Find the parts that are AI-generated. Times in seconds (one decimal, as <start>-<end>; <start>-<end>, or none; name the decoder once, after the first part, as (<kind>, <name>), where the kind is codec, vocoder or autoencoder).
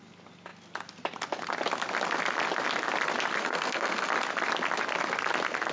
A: 3.4-4.1 (codec, SNAC)